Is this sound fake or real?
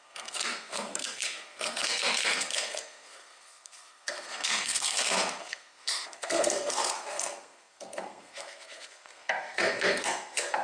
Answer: fake